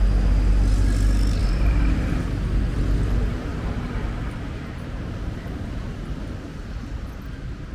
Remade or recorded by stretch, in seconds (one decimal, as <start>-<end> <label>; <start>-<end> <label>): 0.0-1.4 recorded; 1.4-2.2 remade; 2.2-3.4 recorded; 3.4-5.7 remade; 5.7-7.7 recorded